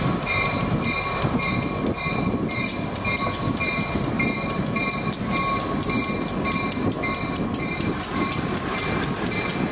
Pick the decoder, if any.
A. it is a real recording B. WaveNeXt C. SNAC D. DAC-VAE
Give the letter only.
A